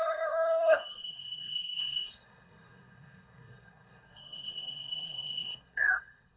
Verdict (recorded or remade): remade